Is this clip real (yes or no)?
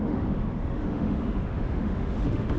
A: no